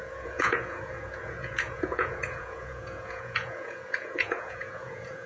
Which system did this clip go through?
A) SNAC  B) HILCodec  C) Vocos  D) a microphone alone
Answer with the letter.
C